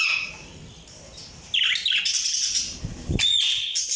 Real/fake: real